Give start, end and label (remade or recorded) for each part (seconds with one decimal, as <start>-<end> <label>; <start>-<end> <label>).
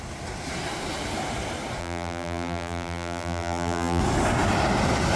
0.0-1.8 recorded; 1.8-4.0 remade; 4.0-5.2 recorded